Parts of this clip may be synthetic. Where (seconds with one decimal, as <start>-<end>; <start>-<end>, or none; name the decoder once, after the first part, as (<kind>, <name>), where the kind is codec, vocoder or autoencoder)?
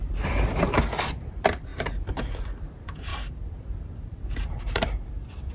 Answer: 1.7-2.2 (vocoder, BigVGAN v2); 3.1-5.1